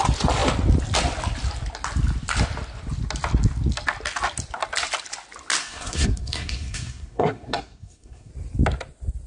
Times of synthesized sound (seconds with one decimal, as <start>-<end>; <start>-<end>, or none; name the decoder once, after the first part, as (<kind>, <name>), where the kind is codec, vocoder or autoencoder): 5.6-8.3 (codec, SNAC)

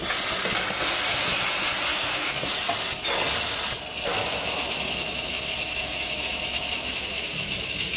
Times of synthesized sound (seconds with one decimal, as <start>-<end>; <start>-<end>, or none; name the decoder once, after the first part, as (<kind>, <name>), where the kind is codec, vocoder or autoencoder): 1.9-2.5 (autoencoder, DAC-VAE); 4.1-8.0

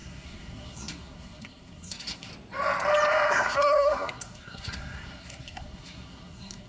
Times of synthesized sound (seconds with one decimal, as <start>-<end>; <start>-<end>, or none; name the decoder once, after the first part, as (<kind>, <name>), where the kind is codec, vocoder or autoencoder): 0.0-2.3 (codec, SNAC); 3.3-6.7

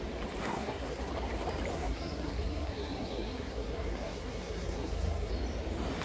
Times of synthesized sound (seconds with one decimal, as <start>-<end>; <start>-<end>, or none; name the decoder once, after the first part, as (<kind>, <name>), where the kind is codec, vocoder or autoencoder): 0.4-1.1 (codec, SNAC); 1.7-5.3

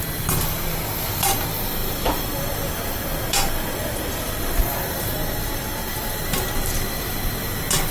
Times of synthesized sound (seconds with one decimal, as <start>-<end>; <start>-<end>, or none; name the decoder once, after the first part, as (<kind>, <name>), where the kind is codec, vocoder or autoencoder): none

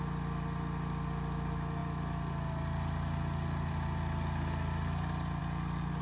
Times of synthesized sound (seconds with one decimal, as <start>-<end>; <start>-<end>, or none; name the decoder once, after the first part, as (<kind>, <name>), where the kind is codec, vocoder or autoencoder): none

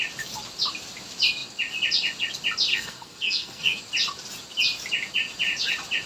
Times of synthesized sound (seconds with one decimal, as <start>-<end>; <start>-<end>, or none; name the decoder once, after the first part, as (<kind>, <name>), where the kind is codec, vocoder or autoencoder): 2.7-3.8 (codec, SNAC)

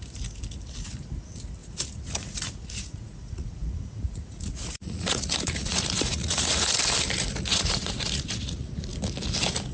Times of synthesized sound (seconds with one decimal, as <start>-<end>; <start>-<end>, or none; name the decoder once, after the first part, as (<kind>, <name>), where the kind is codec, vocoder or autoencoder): 1.6-6.8 (vocoder, Vocos); 7.5-8.7